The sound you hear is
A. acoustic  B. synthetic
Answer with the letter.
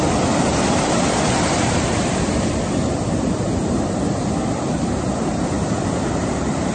B